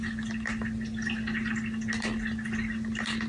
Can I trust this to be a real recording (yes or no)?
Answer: yes